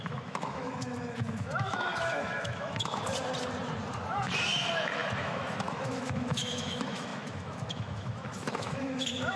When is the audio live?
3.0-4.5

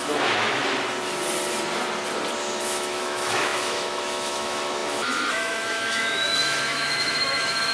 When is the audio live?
0.6-2.6

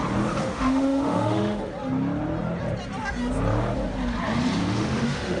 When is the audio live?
0.0-0.4; 1.6-4.6

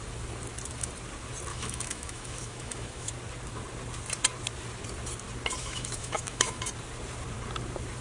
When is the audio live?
0.0-1.5; 3.1-5.6; 6.6-8.0

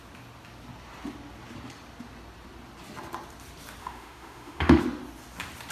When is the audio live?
0.0-3.8; 4.8-5.7

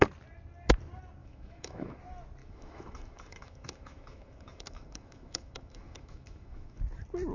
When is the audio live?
0.0-1.2; 2.0-2.4; 6.8-7.3